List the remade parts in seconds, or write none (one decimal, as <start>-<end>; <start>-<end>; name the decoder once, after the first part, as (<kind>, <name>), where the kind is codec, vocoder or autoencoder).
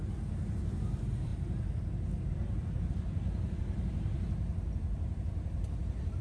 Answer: none